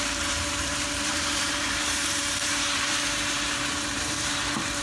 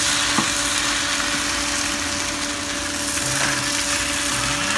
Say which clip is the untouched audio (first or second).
second